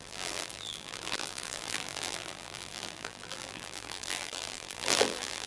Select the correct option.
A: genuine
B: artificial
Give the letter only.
B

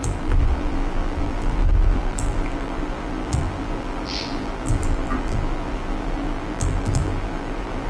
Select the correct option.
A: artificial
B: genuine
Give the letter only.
A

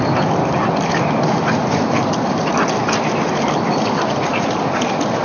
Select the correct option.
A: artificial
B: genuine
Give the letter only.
B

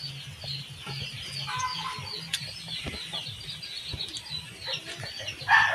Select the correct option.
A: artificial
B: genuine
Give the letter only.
B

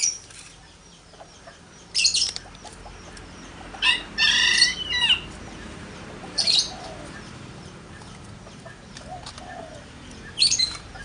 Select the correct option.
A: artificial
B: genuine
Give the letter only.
A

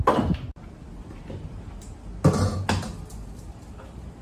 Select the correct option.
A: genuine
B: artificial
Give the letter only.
A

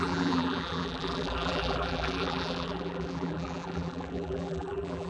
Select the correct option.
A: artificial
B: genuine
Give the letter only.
A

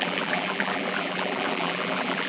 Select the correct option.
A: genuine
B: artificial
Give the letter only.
B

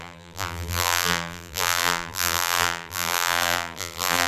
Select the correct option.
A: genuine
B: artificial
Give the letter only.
B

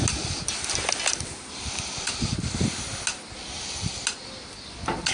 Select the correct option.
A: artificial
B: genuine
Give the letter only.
B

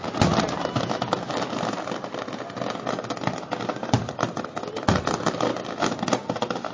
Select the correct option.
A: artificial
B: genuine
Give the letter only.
B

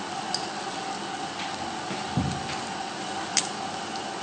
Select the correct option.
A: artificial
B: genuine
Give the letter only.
B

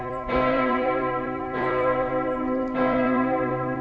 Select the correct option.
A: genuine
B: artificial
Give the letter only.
B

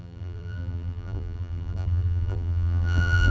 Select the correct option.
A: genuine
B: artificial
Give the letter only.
B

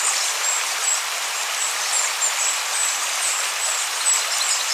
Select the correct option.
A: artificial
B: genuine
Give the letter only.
B